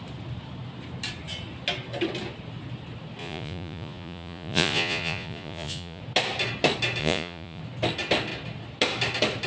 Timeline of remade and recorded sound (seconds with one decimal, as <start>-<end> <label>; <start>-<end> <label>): 0.0-3.2 recorded; 3.2-6.0 remade; 6.0-7.0 recorded; 7.0-7.6 remade; 7.6-9.5 recorded